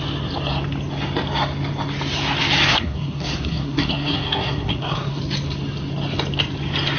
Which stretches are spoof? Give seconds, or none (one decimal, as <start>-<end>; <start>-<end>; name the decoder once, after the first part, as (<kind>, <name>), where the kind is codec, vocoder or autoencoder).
2.7-5.2 (codec, SNAC)